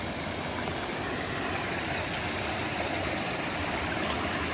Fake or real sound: real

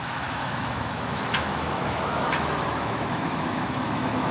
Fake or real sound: fake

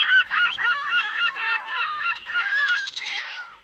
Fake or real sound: fake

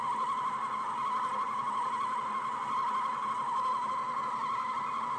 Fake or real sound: real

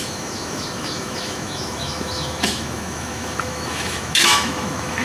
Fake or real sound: fake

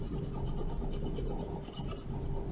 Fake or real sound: real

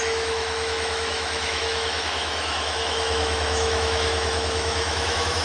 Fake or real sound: fake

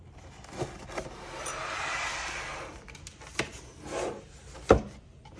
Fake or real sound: real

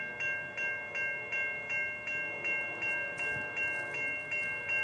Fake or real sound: real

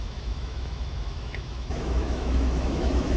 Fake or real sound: fake